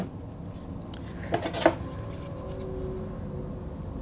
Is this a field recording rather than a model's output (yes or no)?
yes